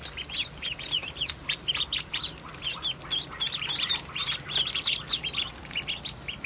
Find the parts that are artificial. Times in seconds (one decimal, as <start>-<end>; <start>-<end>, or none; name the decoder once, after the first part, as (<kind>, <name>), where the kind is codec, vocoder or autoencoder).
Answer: 1.0-4.9 (vocoder, BigVGAN v2)